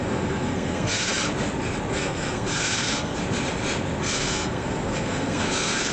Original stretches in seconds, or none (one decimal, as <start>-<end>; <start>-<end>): 1.1-1.9; 3.2-4.0

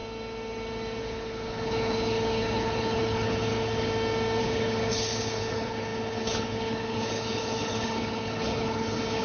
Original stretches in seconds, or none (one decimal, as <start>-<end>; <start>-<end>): 0.0-1.0; 3.9-4.4

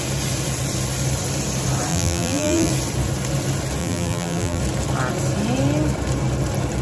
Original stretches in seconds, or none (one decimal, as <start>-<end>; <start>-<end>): 0.0-1.9; 2.7-3.8; 4.6-6.8

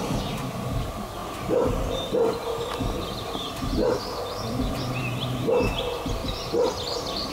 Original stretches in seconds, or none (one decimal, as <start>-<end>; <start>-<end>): 0.0-7.3